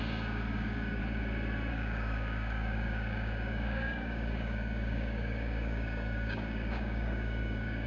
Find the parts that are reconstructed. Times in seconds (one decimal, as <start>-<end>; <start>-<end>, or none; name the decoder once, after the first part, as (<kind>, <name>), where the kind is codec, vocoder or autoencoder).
0.0-1.0 (codec, DAC); 1.7-7.9